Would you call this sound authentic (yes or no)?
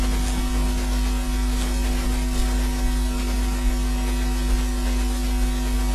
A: yes